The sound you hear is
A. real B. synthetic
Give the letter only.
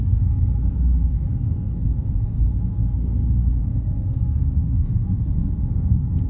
B